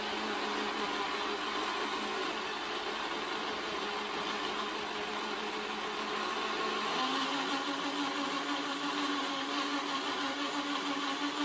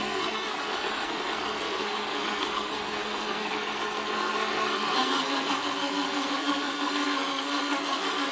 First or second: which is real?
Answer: first